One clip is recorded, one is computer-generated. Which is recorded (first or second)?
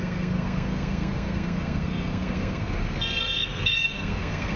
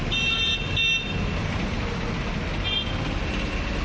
second